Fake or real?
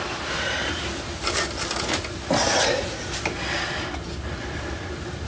real